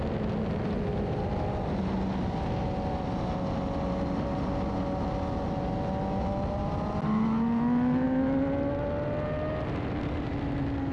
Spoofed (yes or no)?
no